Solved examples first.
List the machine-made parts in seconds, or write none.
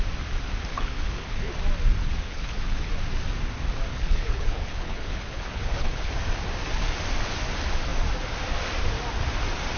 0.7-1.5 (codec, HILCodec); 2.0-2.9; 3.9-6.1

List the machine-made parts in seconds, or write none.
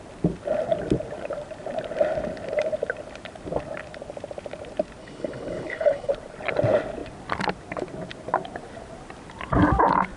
5.0-6.1 (codec, HILCodec)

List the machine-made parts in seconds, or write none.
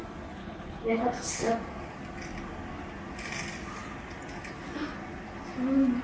0.4-1.5 (codec, HILCodec)